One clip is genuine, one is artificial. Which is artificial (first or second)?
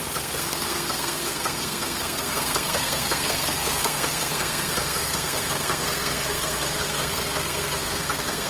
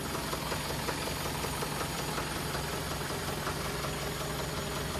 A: first